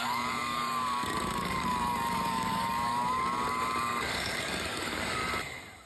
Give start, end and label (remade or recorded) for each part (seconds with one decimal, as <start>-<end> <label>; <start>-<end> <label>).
0.0-5.2 remade; 5.2-5.9 recorded